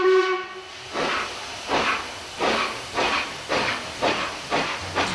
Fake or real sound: real